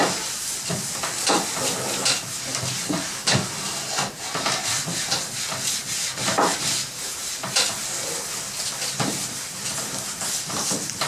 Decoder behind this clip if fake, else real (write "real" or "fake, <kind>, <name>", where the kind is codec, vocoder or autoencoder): real